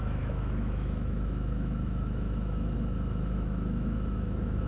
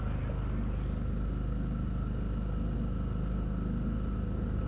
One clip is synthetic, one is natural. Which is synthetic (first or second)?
first